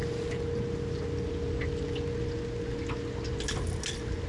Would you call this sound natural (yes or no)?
yes